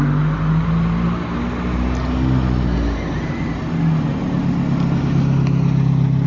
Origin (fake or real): real